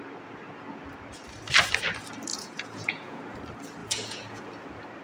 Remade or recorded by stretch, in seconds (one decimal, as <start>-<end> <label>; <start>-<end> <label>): 0.0-2.3 recorded; 2.3-3.2 remade; 3.2-3.8 recorded; 3.8-4.4 remade; 4.4-5.0 recorded